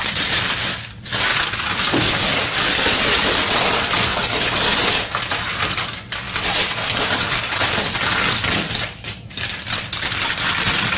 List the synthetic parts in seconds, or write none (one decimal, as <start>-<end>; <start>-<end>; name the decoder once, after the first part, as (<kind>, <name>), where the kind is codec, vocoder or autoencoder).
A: 0.0-4.1 (vocoder, BigVGAN v2); 5.6-11.0